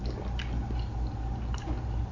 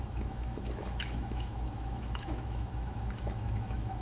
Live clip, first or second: first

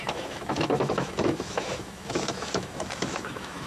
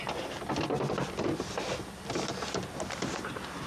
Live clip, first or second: second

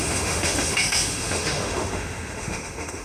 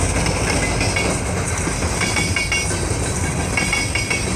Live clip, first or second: second